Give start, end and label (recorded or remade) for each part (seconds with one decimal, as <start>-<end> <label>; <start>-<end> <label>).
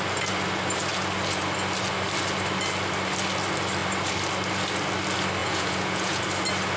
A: 0.0-5.4 recorded; 5.4-6.2 remade; 6.2-6.8 recorded